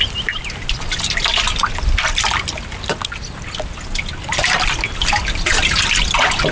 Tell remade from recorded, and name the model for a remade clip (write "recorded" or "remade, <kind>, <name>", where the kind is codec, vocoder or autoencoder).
recorded